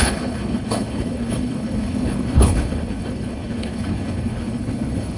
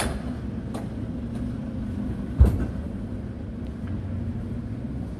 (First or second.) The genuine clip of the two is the second